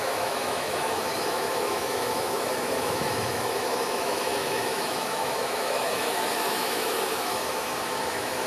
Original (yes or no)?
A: no